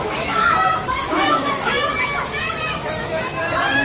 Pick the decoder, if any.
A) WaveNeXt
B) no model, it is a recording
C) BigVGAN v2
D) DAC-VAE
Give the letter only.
D